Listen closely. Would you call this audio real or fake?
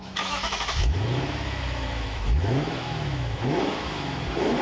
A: fake